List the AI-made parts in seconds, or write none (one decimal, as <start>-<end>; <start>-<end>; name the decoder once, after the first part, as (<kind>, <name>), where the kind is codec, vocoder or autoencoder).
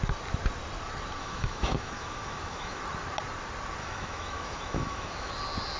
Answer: 1.2-2.8 (autoencoder, DAC-VAE); 3.8-5.3